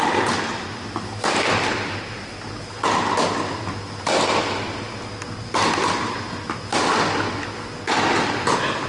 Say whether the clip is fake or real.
real